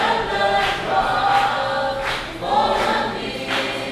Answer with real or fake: real